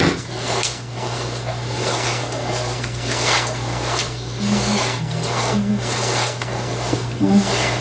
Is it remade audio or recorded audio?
remade